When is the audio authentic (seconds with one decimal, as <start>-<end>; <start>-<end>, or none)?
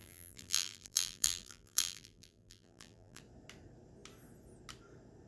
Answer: 3.2-5.3